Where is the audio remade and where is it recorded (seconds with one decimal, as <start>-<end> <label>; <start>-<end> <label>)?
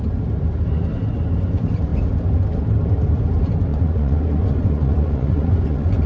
0.0-3.7 recorded; 3.7-6.1 remade